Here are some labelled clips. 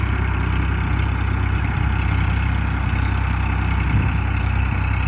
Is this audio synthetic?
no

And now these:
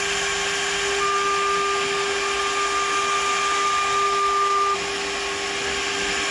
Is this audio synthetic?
no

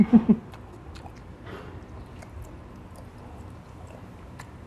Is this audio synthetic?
no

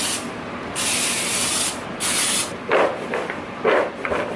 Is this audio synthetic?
yes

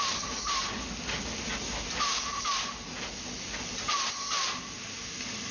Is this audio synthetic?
no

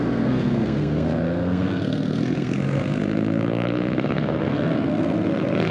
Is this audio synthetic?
yes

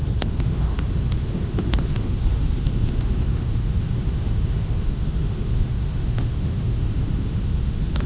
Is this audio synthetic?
yes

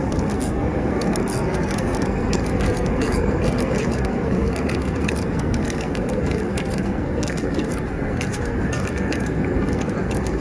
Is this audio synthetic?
yes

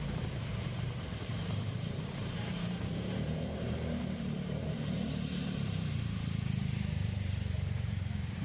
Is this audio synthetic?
yes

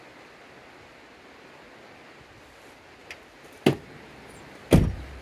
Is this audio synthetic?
no